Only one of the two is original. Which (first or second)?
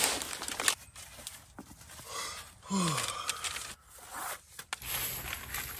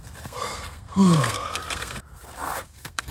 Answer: first